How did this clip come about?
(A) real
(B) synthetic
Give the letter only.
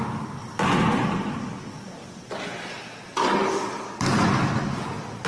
A